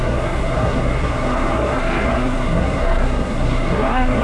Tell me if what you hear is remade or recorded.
remade